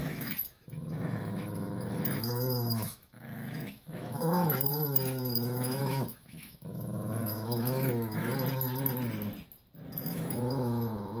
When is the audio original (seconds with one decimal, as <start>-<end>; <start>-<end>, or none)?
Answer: 8.3-10.0